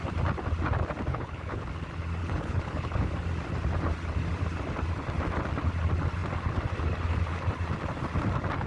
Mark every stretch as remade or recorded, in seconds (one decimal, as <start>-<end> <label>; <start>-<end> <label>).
0.0-1.1 recorded; 1.1-1.7 remade; 1.7-2.2 recorded; 2.2-3.1 remade; 3.1-8.7 recorded